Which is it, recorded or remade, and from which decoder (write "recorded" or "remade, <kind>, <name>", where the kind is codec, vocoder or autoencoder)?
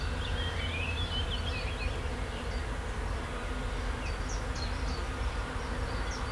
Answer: recorded